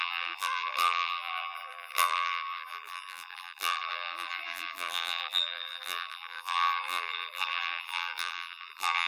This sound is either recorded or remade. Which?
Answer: remade